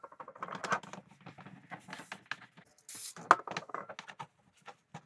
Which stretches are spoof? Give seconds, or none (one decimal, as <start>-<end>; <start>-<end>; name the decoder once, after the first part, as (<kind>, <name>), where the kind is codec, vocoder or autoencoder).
none